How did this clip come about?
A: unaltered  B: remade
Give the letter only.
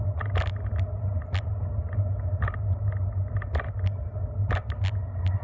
A